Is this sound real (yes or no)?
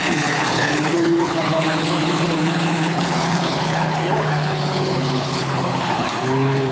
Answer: no